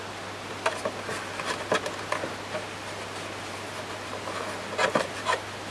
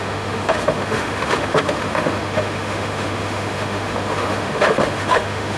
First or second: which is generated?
second